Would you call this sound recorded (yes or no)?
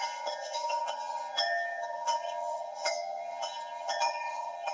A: no